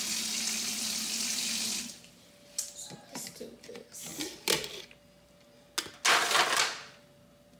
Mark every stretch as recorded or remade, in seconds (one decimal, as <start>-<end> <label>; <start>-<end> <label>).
0.0-7.6 recorded